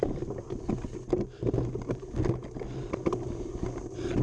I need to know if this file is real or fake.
real